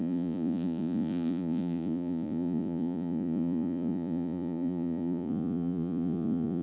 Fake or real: fake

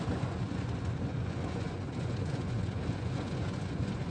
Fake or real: fake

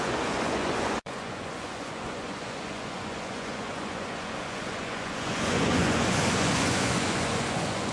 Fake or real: fake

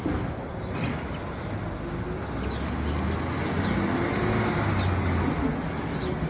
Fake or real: real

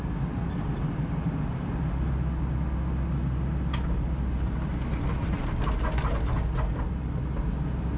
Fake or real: real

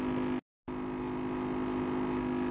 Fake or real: real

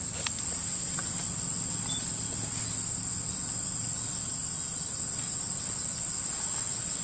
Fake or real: real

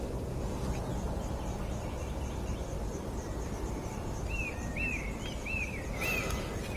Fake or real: real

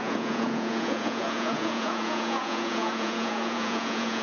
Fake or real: fake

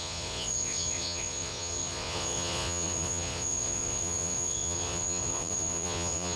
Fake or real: fake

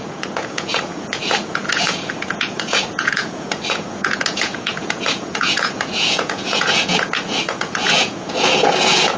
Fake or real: fake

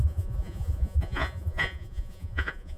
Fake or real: fake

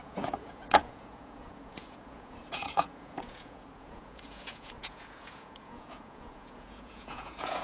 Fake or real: fake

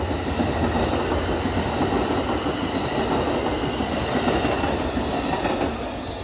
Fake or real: real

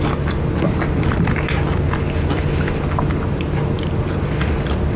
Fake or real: real